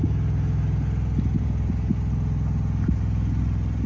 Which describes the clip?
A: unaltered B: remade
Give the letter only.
A